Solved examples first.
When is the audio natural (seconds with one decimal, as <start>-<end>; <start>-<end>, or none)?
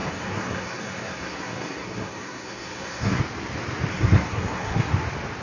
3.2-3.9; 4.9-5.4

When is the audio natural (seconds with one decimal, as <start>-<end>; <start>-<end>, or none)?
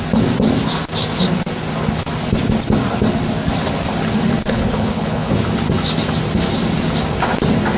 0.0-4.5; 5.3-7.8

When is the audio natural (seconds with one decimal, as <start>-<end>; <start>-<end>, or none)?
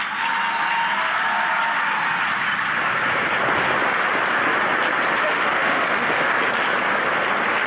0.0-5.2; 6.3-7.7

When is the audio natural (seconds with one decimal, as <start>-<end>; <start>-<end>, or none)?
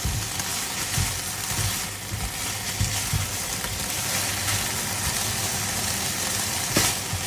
0.0-7.3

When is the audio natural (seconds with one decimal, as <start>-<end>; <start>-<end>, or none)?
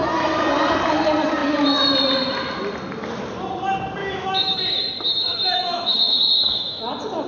0.0-4.0; 4.6-5.1; 6.8-7.3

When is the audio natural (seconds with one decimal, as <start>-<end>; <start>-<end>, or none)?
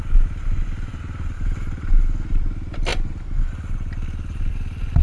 0.0-5.0